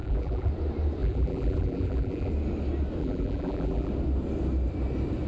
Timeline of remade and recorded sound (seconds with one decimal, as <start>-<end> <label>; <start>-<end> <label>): 0.0-0.5 remade; 0.5-1.0 recorded; 1.0-2.3 remade; 2.3-3.0 recorded; 3.0-3.9 remade; 3.9-5.3 recorded